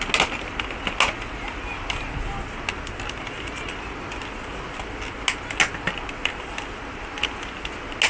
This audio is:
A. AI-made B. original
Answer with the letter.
B